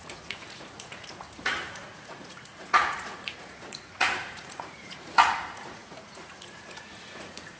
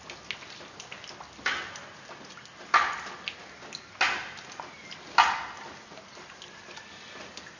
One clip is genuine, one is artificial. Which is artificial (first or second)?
first